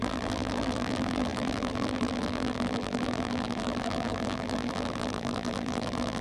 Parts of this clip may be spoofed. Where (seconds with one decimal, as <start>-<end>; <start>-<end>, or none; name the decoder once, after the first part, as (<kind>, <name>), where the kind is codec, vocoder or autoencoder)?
0.0-6.2 (vocoder, BigVGAN v2)